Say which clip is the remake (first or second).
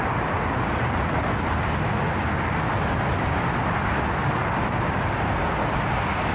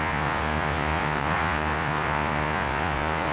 second